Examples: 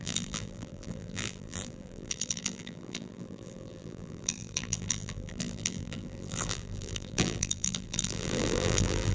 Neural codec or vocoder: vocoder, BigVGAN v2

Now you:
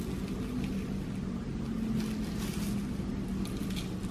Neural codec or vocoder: none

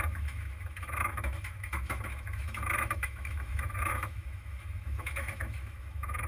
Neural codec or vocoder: autoencoder, DAC-VAE